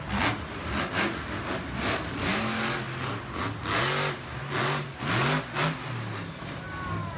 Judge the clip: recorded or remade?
recorded